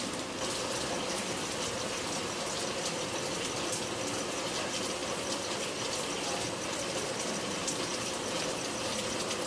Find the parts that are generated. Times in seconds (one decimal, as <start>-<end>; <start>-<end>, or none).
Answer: none